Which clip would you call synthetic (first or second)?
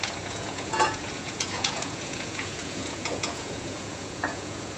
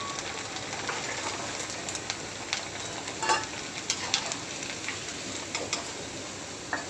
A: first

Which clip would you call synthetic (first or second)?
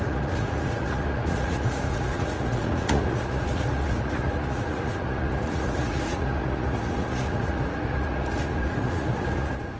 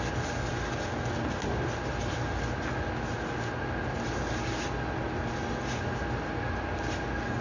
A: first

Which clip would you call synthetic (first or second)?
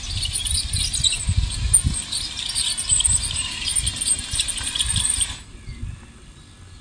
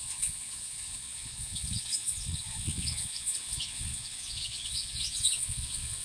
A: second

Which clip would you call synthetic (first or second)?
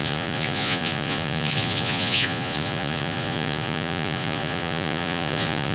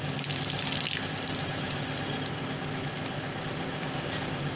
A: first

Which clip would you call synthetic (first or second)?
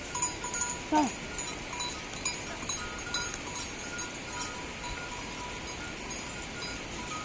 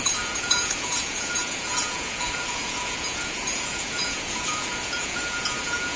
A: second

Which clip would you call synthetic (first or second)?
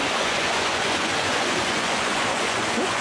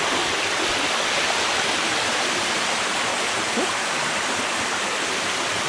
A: first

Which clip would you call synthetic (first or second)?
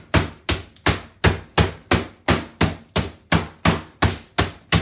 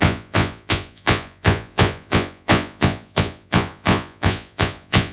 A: second